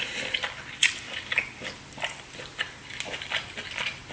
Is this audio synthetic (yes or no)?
no